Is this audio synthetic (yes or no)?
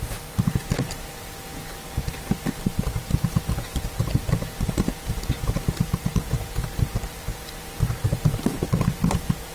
yes